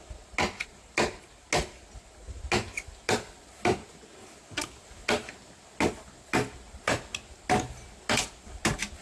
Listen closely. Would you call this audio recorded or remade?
recorded